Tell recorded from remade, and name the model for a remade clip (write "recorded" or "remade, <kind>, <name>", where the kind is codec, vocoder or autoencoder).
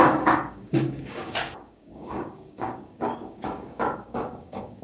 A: remade, codec, DAC